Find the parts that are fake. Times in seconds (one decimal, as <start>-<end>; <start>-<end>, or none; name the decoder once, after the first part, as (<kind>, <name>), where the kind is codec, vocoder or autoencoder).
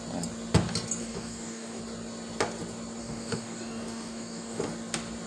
1.0-1.8 (codec, DAC); 3.0-4.6